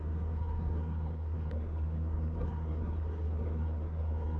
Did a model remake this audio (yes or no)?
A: yes